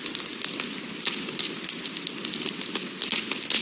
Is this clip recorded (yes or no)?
yes